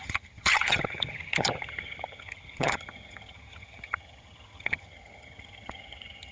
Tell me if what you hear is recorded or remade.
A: remade